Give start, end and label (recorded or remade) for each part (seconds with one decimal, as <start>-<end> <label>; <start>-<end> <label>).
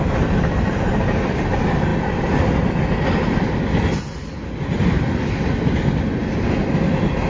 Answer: 0.0-7.3 recorded